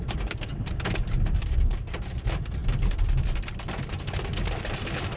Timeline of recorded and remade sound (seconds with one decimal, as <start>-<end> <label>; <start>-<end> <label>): 0.0-5.2 recorded